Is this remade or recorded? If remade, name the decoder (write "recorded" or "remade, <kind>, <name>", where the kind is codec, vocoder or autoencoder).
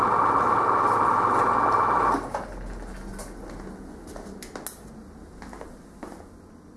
recorded